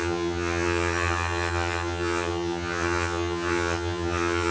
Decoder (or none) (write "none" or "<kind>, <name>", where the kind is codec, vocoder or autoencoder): vocoder, HiFi-GAN